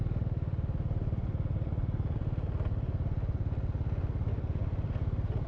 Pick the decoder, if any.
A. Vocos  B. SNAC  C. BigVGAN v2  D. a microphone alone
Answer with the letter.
D